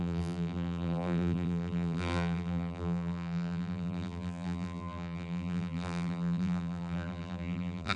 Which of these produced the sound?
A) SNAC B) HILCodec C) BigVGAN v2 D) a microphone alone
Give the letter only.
C